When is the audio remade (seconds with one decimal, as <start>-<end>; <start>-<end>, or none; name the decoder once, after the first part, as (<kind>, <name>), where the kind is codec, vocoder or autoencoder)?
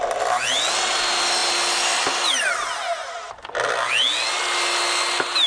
none